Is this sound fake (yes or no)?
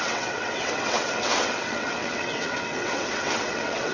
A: yes